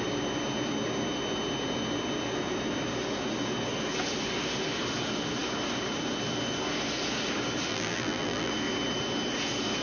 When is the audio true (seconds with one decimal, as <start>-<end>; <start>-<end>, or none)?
0.0-7.7; 8.5-9.8

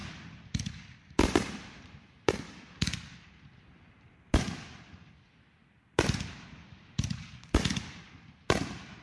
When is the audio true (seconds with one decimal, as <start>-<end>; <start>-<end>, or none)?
0.0-1.0

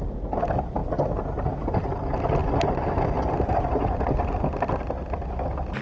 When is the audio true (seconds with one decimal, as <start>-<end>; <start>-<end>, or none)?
0.0-5.8

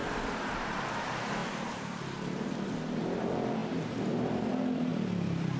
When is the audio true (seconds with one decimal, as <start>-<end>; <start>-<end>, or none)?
4.9-5.6

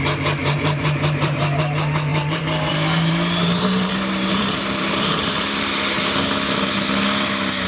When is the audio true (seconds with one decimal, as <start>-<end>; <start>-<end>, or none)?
0.0-0.4; 1.6-2.1; 5.6-7.7

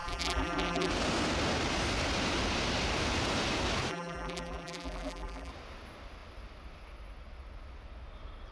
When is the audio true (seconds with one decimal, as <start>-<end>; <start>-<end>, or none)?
0.9-3.9; 5.5-8.5

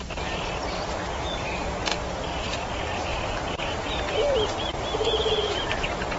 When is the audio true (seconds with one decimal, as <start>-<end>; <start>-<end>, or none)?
1.9-2.7

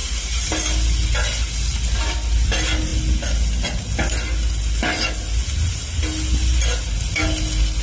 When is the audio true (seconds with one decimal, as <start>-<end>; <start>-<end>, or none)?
0.5-7.8